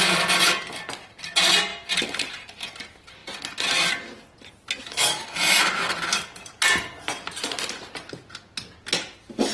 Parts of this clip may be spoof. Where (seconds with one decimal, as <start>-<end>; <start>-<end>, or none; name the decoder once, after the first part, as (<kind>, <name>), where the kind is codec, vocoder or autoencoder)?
4.8-5.6 (autoencoder, DAC-VAE)